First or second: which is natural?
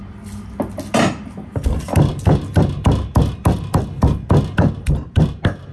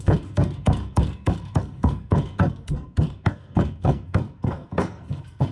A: first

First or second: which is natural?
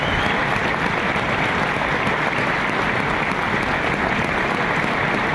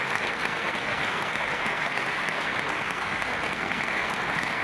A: first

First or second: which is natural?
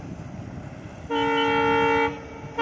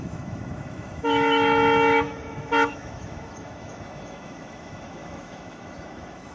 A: first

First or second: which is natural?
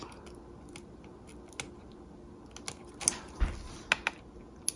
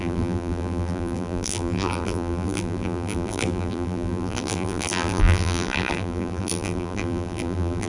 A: first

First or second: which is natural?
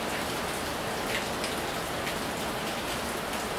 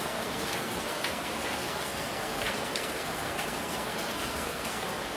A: first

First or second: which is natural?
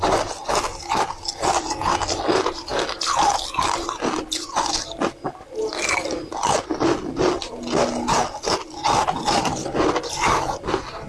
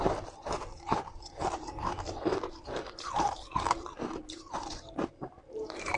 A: first